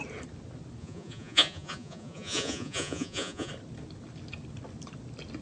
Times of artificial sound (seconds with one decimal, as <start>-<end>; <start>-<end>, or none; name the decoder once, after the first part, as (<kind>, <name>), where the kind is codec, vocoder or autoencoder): 0.8-3.5 (vocoder, Vocos)